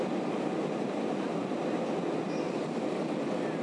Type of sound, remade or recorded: recorded